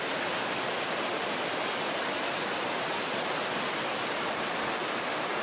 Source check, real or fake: real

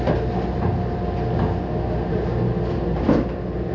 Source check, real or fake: real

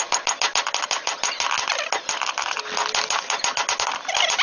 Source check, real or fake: real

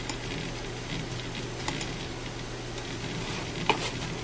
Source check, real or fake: real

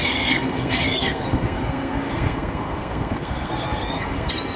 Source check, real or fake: fake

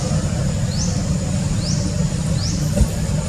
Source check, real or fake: real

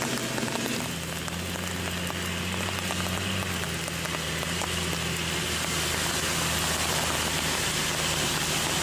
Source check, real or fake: real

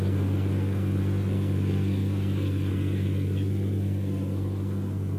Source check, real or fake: fake